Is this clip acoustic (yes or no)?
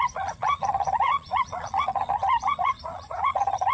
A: no